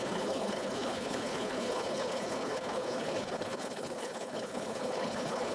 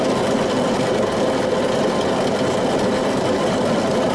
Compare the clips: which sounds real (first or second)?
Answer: second